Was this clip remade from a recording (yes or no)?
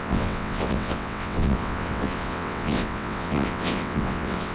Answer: yes